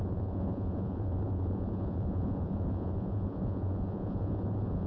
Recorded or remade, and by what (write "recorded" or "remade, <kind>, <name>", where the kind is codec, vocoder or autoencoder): remade, vocoder, Vocos